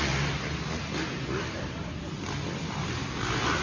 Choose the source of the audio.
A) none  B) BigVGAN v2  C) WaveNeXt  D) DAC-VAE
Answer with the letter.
A